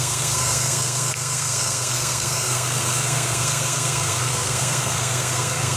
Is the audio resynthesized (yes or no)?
yes